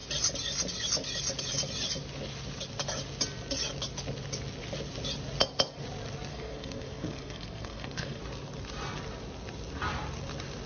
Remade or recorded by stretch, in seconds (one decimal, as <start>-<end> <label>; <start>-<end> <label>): 0.0-6.3 recorded; 6.3-8.2 remade; 8.2-10.7 recorded